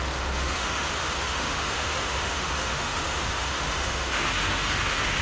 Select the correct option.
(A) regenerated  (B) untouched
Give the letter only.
A